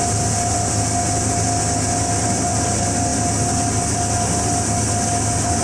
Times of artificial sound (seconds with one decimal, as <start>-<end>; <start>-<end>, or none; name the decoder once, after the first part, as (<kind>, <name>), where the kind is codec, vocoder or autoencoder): none